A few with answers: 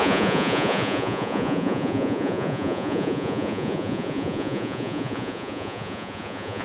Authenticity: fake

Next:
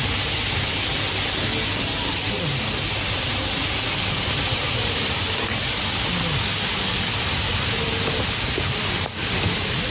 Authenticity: real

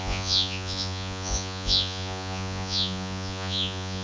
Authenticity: fake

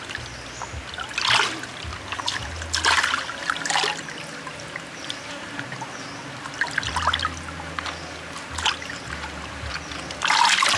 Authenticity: real